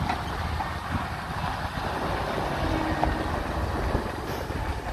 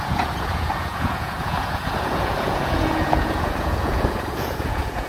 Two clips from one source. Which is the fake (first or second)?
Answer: second